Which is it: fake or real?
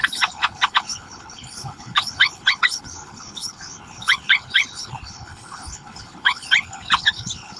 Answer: fake